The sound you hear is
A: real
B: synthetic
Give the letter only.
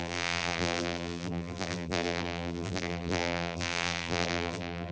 B